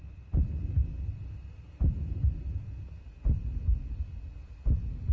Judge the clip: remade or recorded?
recorded